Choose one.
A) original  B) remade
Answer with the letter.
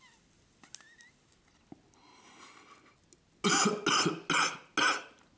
A